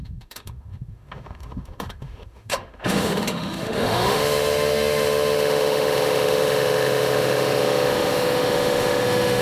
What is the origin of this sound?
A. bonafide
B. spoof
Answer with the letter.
B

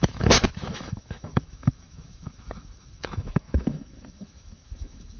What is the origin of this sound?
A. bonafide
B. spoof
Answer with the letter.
B